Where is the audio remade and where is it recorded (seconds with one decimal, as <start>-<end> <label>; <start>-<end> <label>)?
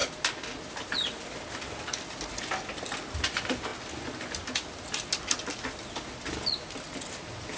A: 0.0-7.6 recorded